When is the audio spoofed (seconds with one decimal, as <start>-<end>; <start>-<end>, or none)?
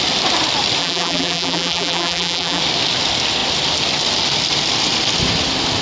0.8-2.6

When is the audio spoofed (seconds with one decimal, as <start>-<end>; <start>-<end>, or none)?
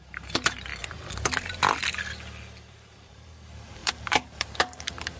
0.0-0.7; 2.7-5.2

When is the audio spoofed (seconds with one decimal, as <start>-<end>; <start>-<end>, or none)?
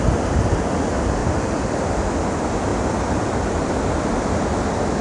1.2-2.0; 2.7-3.8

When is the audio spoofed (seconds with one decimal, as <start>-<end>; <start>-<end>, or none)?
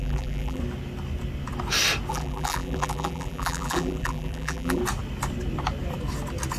0.0-0.6; 2.1-4.8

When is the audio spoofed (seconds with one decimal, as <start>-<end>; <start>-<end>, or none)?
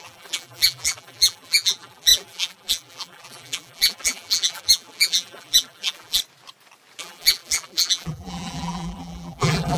0.0-6.2; 7.0-9.8